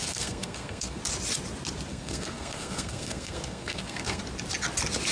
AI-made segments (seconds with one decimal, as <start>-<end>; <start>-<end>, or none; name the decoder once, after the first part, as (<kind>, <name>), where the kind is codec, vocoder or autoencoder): 0.0-1.0 (codec, SNAC); 1.9-4.2